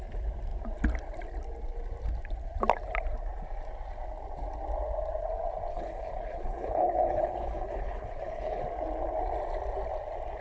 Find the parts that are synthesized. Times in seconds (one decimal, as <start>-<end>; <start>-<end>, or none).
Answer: 5.7-8.6